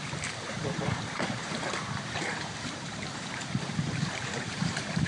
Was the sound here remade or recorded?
remade